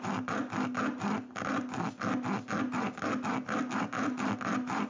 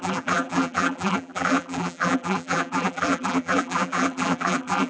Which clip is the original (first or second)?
first